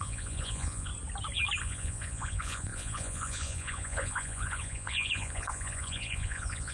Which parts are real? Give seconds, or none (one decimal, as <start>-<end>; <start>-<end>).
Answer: 0.9-1.6